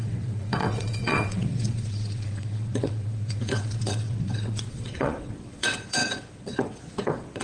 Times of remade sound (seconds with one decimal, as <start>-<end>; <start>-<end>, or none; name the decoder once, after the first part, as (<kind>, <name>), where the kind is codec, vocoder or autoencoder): 0.0-7.4 (vocoder, WaveNeXt)